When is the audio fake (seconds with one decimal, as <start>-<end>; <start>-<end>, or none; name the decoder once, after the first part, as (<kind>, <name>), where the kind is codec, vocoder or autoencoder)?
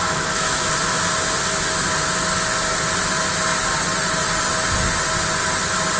0.0-0.7 (autoencoder, DAC-VAE)